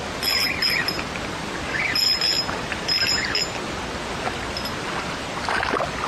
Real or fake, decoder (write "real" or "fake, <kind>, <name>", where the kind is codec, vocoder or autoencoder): real